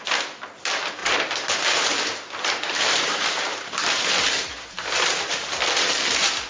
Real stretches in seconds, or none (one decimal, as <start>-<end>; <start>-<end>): 0.0-1.0; 4.0-4.5

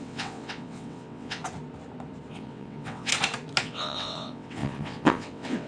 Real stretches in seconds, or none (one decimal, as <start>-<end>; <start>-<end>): 1.4-2.3; 3.1-3.6

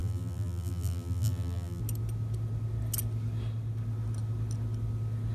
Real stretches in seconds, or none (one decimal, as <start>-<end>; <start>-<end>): 1.8-5.3

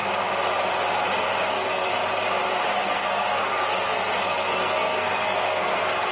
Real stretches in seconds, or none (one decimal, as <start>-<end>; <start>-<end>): 0.0-1.5; 1.9-2.8

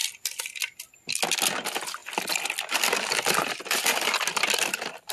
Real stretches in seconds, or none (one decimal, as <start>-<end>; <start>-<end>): 0.0-5.1

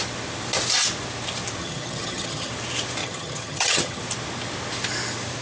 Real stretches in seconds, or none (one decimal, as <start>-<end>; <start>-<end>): 0.0-1.6; 2.5-3.0; 4.0-5.4

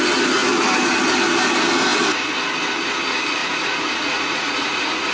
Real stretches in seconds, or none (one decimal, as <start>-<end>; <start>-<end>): 0.0-3.4

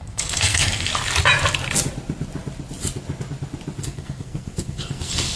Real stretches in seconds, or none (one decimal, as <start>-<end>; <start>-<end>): 0.9-3.8